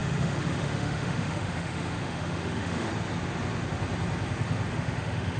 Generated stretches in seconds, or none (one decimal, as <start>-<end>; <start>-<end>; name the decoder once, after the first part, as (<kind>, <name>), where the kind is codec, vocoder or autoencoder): 0.0-2.9 (autoencoder, DAC-VAE); 4.7-5.4